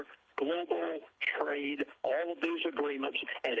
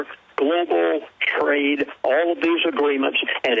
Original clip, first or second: second